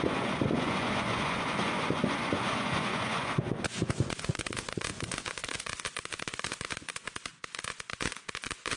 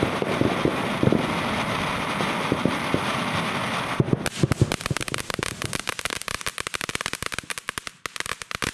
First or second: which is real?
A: second